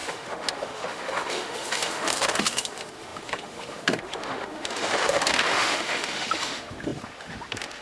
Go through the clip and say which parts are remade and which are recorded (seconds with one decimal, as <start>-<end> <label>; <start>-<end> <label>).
0.0-7.8 remade